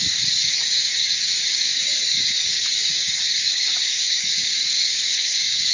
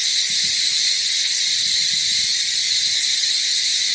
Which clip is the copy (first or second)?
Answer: first